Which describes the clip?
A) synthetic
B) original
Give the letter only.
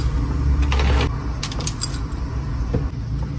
B